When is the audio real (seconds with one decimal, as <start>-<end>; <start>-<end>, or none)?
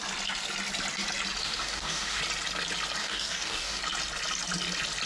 0.0-1.4; 2.2-3.0; 3.8-5.1